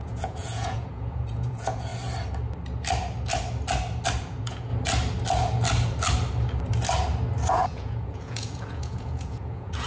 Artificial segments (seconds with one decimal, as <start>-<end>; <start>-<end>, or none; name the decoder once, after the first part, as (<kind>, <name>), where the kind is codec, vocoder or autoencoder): 0.0-1.9 (vocoder, Vocos); 4.2-4.7; 7.5-9.9